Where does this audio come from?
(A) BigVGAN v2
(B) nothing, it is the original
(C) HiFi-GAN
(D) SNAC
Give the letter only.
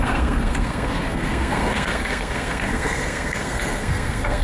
D